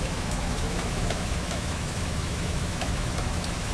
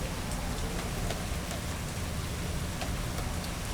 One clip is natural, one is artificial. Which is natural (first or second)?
second